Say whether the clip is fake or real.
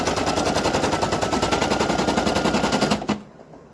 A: real